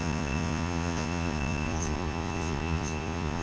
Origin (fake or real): fake